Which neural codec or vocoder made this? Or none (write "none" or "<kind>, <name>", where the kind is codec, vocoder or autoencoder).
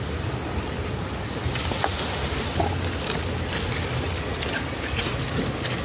none